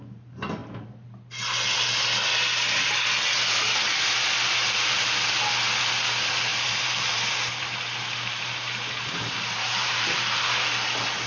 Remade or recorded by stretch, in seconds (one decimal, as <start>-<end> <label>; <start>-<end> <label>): 0.0-6.5 recorded; 6.5-10.3 remade; 10.3-11.3 recorded